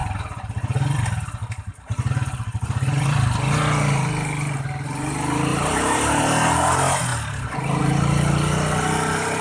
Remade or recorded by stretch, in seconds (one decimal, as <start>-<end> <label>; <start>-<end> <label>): 0.0-0.5 remade; 0.5-1.4 recorded; 1.4-2.1 remade; 2.1-5.5 recorded; 5.5-6.2 remade; 6.2-9.4 recorded